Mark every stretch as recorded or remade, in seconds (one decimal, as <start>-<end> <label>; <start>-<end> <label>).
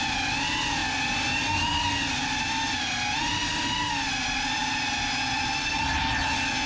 0.0-6.7 recorded